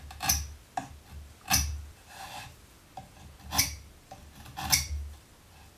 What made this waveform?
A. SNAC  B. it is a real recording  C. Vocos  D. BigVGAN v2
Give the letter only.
B